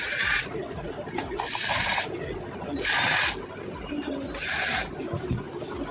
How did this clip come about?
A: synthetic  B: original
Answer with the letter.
B